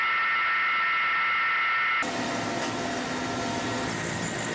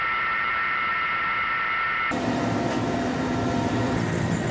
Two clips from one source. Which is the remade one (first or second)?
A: second